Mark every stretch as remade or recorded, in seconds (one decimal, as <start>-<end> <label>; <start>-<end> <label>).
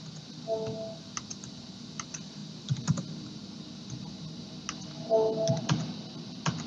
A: 0.0-6.7 recorded